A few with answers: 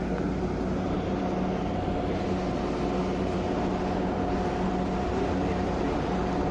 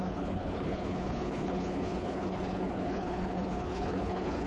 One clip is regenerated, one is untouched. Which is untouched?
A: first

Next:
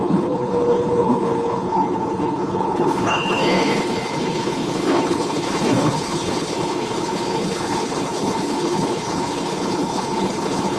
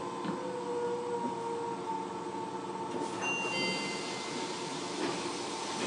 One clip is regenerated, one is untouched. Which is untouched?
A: second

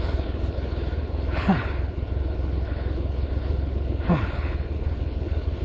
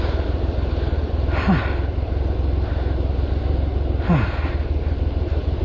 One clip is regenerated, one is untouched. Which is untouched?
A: second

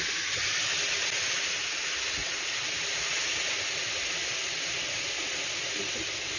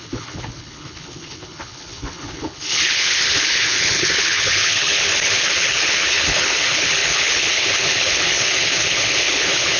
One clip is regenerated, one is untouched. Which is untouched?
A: first